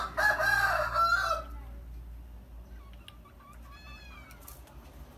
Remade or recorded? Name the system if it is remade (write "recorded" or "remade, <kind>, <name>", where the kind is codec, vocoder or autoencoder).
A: recorded